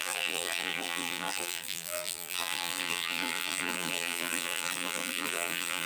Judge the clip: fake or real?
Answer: fake